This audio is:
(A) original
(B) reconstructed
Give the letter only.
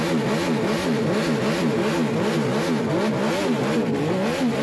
A